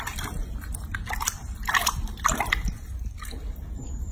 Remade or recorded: remade